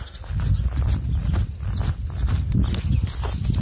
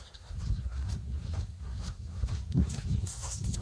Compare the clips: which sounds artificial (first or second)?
second